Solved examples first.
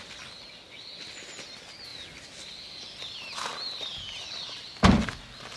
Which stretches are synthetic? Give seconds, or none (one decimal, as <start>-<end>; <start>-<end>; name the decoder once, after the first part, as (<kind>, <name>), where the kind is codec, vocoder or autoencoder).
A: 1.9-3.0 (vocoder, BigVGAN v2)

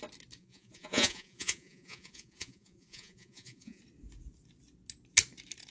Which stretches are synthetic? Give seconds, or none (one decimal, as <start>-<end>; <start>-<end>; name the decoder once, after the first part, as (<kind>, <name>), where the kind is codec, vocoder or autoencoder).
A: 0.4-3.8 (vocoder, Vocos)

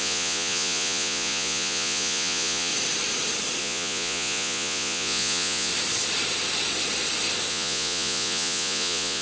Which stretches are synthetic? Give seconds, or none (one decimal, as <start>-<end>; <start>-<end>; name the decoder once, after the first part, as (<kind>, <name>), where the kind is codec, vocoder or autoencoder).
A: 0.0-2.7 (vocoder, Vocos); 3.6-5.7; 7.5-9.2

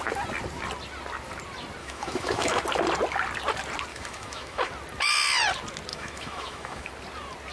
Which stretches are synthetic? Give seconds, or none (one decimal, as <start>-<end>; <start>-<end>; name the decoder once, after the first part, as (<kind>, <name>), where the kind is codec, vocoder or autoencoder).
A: 1.8-2.6 (autoencoder, DAC-VAE); 3.9-4.7; 5.9-6.9

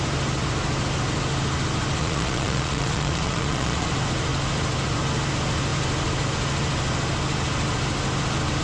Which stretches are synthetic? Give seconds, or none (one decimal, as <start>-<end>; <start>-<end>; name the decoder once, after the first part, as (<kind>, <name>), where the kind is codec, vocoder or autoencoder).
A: 2.0-3.9 (vocoder, Vocos)

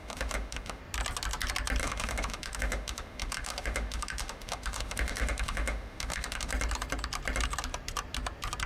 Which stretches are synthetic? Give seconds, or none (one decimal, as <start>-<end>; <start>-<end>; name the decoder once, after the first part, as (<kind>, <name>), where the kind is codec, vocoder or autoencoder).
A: 0.0-0.8 (autoencoder, DAC-VAE); 1.8-6.5

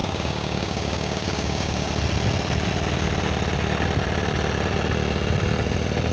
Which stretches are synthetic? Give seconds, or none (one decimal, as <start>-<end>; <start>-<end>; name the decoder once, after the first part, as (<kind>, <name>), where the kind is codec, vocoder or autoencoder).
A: 0.0-1.9 (codec, DAC)